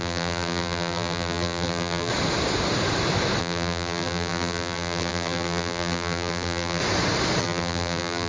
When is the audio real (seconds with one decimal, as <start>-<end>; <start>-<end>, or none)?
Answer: 2.1-3.4; 6.8-7.4